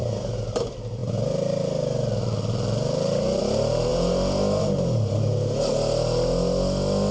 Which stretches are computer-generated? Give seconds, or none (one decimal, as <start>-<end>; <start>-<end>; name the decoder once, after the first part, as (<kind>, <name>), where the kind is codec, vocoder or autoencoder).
none

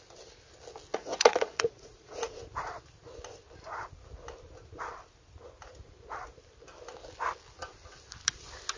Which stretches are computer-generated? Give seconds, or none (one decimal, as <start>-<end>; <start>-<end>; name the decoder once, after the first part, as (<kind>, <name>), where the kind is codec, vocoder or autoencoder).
0.9-2.4 (vocoder, Vocos)

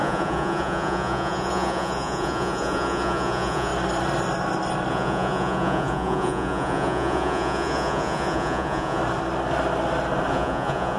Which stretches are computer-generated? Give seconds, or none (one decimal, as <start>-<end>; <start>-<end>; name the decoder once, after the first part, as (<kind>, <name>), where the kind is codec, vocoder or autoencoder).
0.0-3.7 (vocoder, Vocos); 4.9-9.0; 10.3-11.0

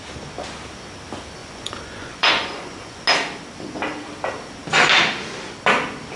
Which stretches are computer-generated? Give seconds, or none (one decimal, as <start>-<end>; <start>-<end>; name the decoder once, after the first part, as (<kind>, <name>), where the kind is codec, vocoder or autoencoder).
1.4-3.0 (vocoder, Vocos)

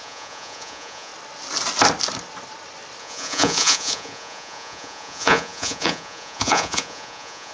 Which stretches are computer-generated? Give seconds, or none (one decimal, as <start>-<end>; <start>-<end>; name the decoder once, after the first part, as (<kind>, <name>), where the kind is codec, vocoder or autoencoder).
0.0-1.1 (vocoder, Vocos); 3.0-7.5

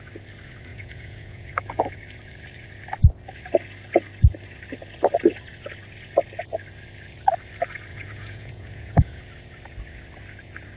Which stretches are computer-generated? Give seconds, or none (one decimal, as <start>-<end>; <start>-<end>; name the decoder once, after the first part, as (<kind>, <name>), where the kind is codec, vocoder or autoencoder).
0.7-2.0 (vocoder, Vocos); 7.9-9.2

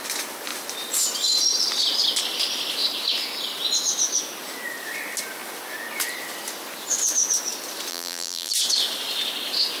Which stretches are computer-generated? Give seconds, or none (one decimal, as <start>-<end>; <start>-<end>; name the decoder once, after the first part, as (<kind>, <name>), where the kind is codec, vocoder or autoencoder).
7.9-8.5 (vocoder, BigVGAN v2)

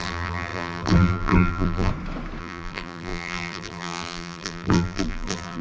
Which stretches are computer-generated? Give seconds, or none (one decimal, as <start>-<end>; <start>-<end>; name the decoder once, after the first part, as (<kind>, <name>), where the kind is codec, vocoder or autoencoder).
0.0-1.9 (vocoder, BigVGAN v2); 2.4-5.6